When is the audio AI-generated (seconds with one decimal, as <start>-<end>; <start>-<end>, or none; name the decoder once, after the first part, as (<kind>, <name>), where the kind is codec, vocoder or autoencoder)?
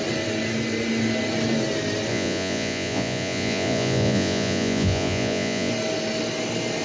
2.1-5.7 (vocoder, Vocos)